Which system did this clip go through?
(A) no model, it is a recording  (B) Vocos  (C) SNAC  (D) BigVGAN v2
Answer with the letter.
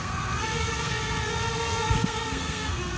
C